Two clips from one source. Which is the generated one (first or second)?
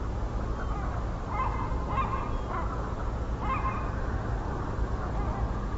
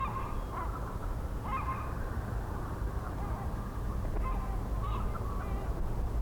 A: second